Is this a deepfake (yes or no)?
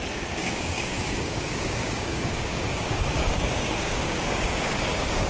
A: yes